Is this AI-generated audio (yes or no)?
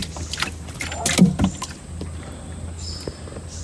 no